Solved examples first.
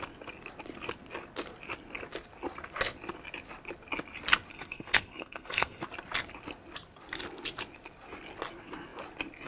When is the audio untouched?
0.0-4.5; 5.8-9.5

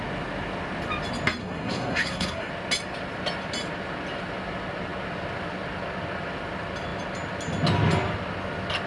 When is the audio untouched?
0.0-1.4; 2.5-8.9

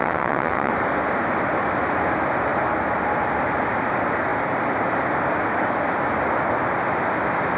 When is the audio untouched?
0.7-7.6

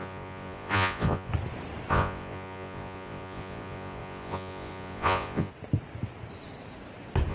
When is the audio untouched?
1.3-1.9; 5.5-7.3

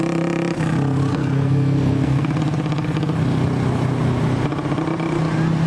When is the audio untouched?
0.0-1.1; 2.4-5.7

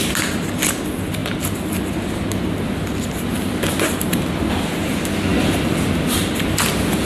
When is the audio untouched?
0.0-7.1

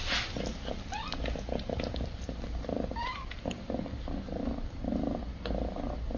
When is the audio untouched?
0.0-6.2